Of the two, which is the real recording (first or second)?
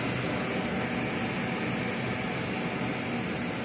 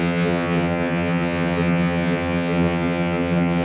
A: first